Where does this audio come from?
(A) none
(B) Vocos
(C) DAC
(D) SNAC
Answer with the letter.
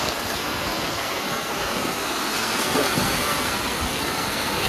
D